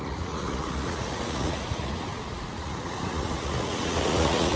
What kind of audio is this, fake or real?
fake